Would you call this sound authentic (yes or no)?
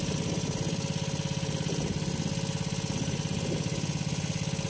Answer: yes